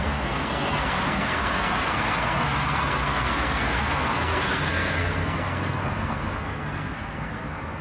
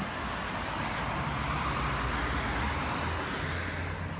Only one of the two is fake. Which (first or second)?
first